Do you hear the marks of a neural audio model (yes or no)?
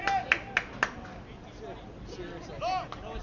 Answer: no